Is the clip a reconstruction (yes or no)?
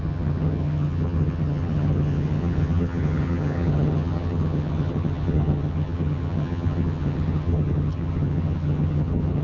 yes